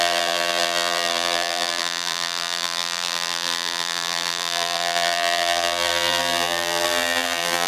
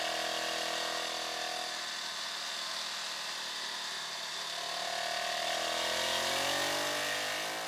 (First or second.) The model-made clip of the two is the first